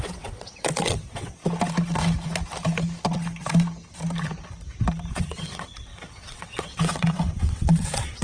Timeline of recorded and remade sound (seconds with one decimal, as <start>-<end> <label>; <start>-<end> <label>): 0.0-1.4 remade; 1.4-5.1 recorded; 5.1-8.2 remade